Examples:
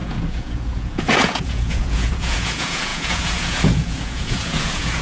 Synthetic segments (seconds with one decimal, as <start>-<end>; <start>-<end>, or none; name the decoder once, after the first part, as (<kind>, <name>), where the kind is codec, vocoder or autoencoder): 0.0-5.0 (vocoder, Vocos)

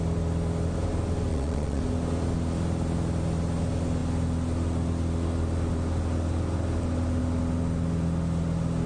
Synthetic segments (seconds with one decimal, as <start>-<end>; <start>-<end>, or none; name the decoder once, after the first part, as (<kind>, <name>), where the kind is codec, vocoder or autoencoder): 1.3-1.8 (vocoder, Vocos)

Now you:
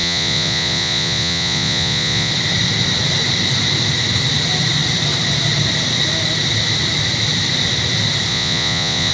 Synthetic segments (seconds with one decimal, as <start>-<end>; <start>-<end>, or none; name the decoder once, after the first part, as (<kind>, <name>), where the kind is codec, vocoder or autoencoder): 0.0-2.3 (vocoder, Vocos); 8.3-9.1